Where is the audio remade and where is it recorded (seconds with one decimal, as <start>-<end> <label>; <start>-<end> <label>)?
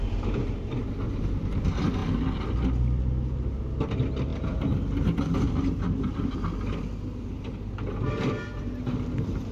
0.0-9.5 recorded